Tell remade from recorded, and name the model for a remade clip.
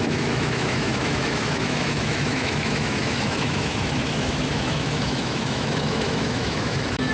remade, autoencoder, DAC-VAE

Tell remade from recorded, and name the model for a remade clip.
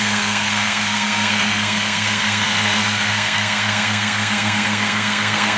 remade, codec, SNAC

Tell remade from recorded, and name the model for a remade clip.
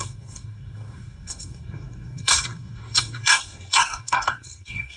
remade, codec, SNAC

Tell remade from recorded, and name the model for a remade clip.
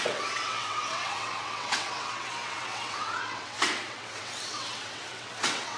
remade, vocoder, WaveNeXt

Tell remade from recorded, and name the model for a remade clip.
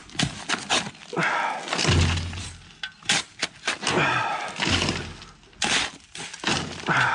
recorded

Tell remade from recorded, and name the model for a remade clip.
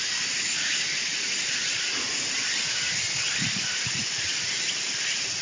recorded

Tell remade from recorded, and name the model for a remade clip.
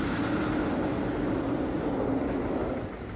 recorded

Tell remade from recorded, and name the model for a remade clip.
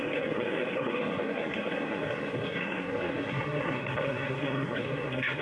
remade, codec, SNAC